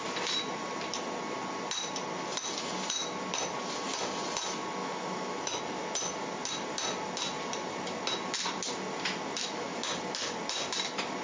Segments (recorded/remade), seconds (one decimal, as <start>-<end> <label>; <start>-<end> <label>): 0.0-4.8 recorded; 4.8-5.6 remade; 5.6-9.4 recorded; 9.4-9.9 remade; 9.9-11.2 recorded